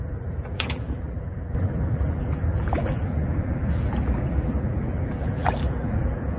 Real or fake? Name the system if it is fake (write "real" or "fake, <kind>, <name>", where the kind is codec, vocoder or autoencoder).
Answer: fake, vocoder, BigVGAN v2